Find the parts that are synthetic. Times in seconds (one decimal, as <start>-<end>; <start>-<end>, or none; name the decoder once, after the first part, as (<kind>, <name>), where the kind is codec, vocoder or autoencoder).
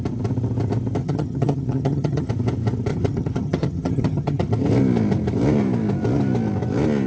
1.0-2.3 (vocoder, HiFi-GAN); 2.9-4.5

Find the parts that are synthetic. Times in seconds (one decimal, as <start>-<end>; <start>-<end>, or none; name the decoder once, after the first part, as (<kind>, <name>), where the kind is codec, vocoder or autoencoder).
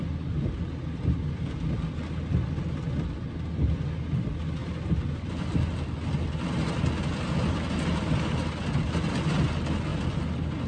none